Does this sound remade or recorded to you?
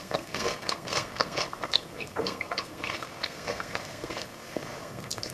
remade